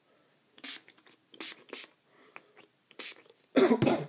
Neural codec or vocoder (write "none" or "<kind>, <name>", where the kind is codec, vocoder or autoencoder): none